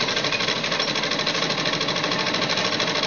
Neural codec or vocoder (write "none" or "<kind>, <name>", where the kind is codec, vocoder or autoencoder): none